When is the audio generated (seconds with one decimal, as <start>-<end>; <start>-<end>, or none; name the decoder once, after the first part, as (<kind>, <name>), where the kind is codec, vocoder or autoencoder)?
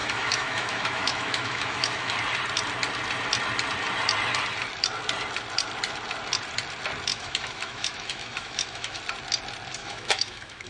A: 0.0-2.1 (autoencoder, DAC-VAE); 7.1-9.0; 9.8-10.7